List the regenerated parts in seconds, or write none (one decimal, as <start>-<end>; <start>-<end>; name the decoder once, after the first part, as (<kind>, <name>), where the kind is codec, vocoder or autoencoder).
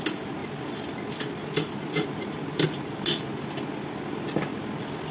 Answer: none